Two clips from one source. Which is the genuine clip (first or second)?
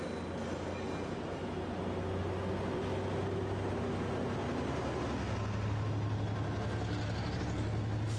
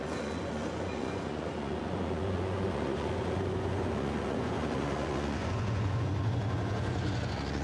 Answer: first